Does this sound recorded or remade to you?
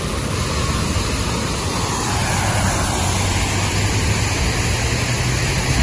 recorded